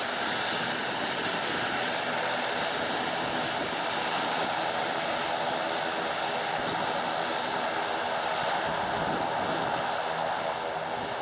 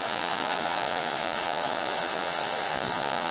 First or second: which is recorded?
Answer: first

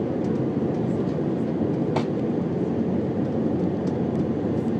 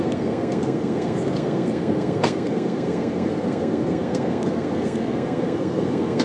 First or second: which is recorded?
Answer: first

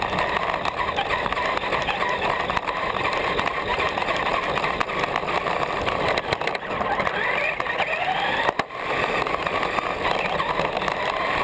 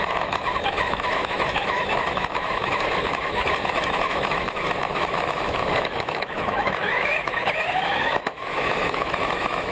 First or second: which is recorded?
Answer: first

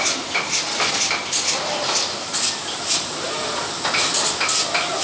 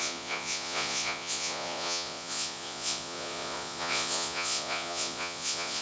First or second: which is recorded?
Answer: first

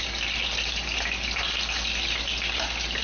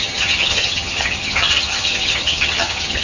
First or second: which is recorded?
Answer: first